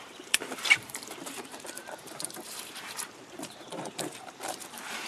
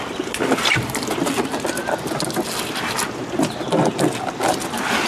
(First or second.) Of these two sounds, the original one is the second